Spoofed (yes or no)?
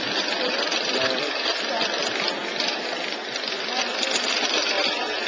no